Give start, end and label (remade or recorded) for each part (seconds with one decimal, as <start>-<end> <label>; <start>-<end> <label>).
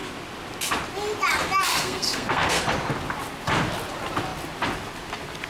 0.0-1.7 recorded; 1.7-2.6 remade; 2.6-5.5 recorded